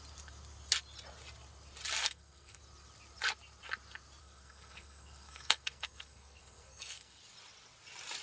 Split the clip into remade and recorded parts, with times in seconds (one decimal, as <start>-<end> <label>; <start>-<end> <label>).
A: 0.0-2.0 recorded; 2.0-2.6 remade; 2.6-4.2 recorded; 4.2-7.2 remade; 7.2-8.2 recorded